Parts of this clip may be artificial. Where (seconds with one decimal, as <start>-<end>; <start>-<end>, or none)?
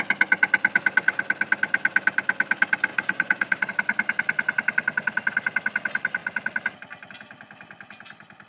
2.9-3.7